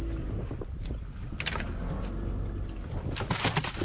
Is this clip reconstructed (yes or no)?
no